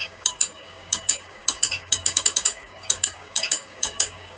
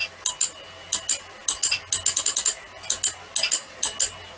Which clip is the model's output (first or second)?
first